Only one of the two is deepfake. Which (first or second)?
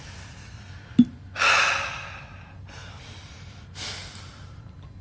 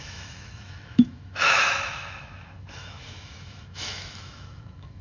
second